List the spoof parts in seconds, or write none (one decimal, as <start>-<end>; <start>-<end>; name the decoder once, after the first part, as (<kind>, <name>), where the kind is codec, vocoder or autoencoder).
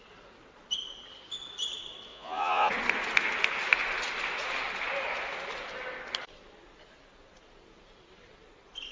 2.1-2.7 (vocoder, Vocos)